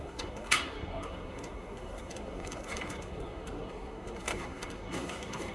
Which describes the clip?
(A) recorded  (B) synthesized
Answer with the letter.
B